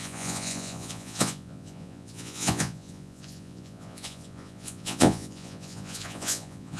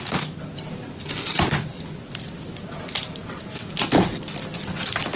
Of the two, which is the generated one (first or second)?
first